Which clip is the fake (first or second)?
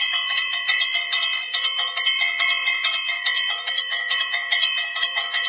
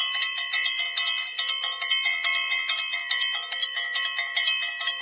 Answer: first